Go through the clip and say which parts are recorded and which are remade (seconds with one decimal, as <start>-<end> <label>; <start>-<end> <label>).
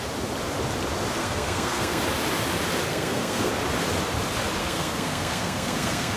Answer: 0.0-1.2 recorded; 1.2-2.0 remade; 2.0-2.9 recorded; 2.9-3.5 remade; 3.5-4.6 recorded; 4.6-6.2 remade